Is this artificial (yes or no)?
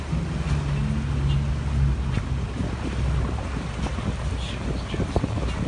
no